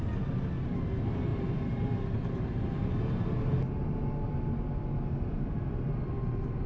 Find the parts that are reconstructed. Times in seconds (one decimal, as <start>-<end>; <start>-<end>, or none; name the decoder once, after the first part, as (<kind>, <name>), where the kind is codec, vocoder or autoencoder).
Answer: 1.3-3.6 (vocoder, BigVGAN v2)